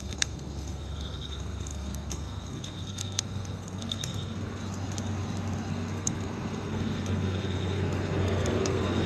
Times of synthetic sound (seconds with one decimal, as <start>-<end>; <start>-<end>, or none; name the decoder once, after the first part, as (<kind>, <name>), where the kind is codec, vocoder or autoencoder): 0.0-4.6 (codec, SNAC); 5.7-9.1